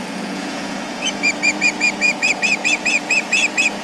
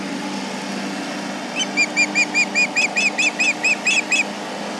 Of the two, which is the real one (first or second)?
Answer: second